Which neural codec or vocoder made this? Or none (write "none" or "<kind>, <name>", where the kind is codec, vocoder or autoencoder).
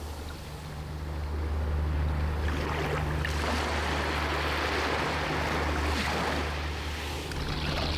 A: none